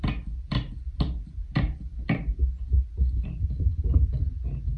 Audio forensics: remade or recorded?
recorded